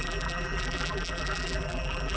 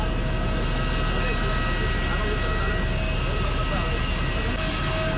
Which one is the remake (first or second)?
first